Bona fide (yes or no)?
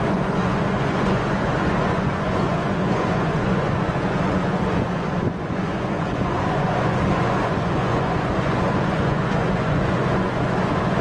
no